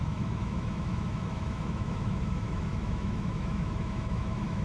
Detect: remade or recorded remade